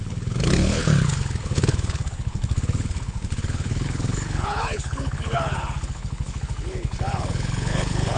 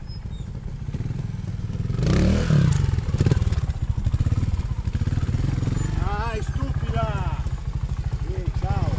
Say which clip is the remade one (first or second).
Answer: first